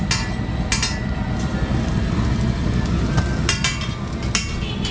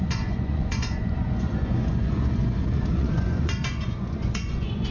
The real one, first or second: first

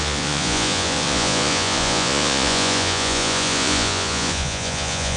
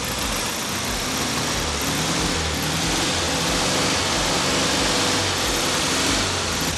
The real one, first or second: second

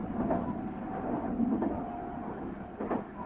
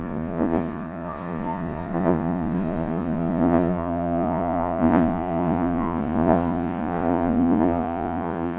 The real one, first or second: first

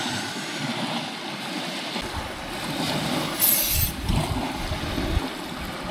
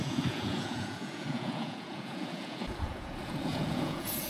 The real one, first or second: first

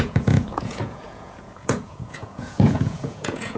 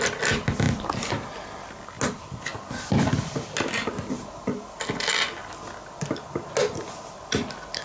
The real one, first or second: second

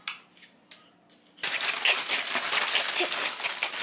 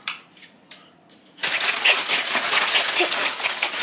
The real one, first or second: first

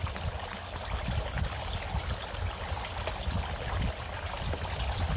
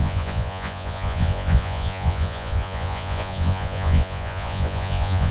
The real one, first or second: first